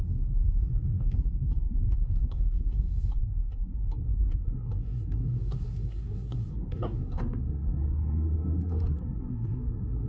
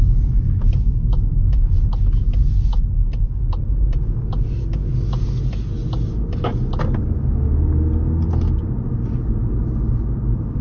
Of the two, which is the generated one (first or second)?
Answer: first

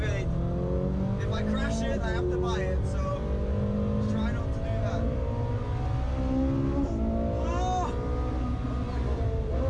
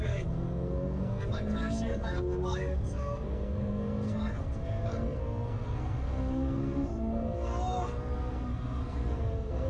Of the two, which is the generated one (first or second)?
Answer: second